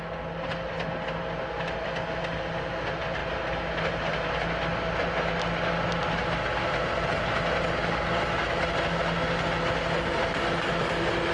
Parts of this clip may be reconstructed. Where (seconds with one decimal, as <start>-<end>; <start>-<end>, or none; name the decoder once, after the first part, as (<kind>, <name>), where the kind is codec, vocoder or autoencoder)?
none